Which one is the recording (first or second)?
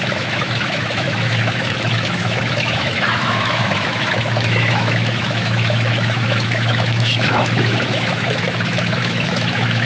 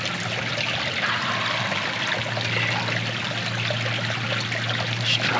second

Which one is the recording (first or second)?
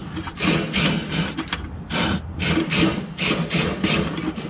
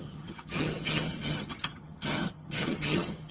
first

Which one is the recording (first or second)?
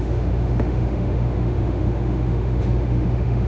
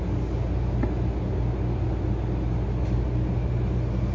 second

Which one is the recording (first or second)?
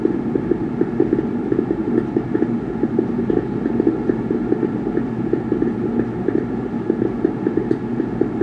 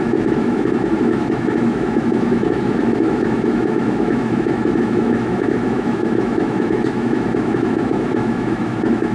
first